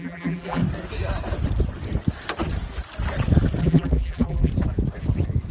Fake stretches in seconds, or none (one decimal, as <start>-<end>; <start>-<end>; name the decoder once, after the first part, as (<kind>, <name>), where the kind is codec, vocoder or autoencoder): 0.0-0.6 (vocoder, BigVGAN v2); 3.6-4.5